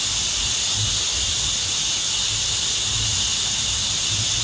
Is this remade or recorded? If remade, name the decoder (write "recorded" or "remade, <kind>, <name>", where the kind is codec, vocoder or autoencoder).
recorded